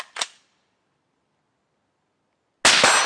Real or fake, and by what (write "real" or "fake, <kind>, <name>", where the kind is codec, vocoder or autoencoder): real